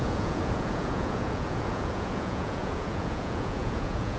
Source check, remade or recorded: remade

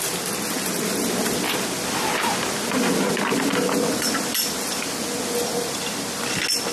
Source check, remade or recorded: recorded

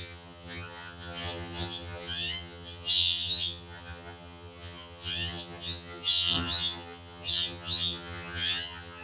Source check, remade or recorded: remade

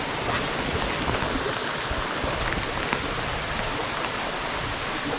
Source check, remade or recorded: recorded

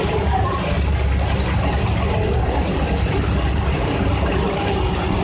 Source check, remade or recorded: recorded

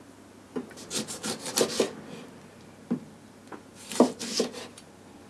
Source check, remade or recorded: recorded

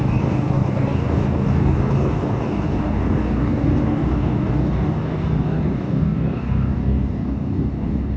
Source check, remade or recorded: remade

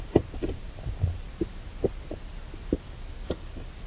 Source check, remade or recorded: recorded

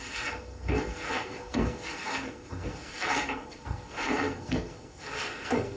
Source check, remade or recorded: remade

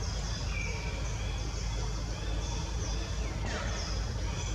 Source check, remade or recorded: recorded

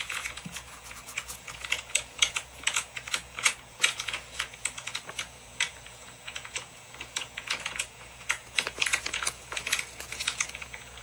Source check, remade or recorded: remade